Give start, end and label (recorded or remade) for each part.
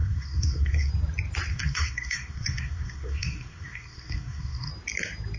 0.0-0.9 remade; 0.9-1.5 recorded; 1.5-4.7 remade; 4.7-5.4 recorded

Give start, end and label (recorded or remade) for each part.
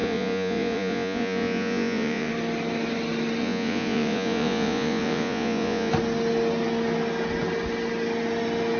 0.0-2.3 remade; 2.3-3.4 recorded; 3.4-5.9 remade; 5.9-8.8 recorded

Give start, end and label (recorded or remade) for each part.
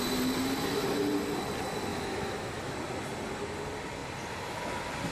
0.0-1.9 recorded; 1.9-2.7 remade; 2.7-5.1 recorded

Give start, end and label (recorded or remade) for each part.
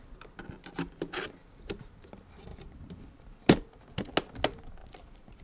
0.0-1.4 recorded; 1.4-1.9 remade; 1.9-2.5 recorded; 2.5-3.2 remade; 3.2-4.8 recorded; 4.8-5.4 remade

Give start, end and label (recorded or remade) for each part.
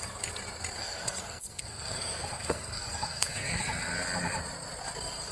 0.0-0.8 recorded; 0.8-3.6 remade; 3.6-5.3 recorded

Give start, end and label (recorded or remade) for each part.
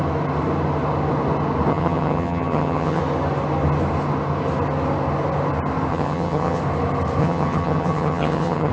0.0-1.7 recorded; 1.7-3.0 remade; 3.0-5.9 recorded; 5.9-6.6 remade; 6.6-7.2 recorded; 7.2-8.7 remade